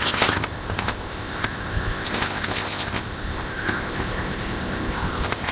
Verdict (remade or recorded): remade